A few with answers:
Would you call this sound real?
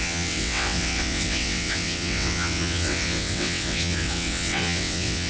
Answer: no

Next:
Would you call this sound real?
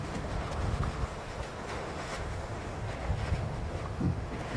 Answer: no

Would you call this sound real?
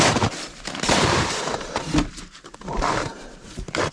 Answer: no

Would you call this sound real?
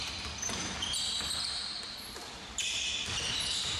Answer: yes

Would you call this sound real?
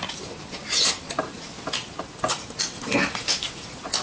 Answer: yes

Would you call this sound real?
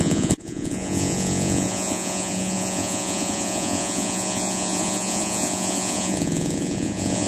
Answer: no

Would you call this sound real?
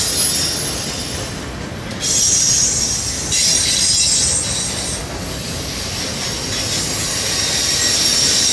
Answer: yes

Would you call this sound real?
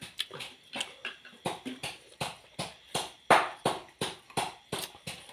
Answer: yes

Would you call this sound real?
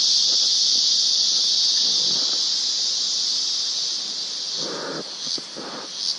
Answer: yes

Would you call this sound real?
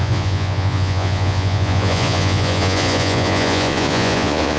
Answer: no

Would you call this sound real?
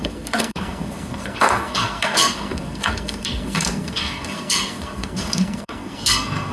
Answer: no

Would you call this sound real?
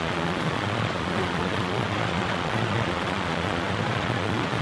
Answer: no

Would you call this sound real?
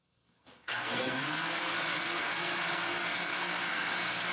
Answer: no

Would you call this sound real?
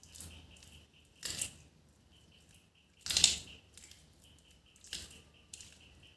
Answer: yes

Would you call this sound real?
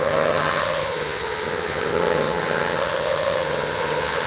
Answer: no